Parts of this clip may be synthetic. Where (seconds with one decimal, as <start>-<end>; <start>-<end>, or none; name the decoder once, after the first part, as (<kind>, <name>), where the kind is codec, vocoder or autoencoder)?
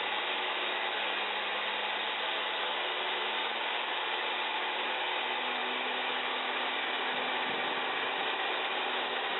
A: none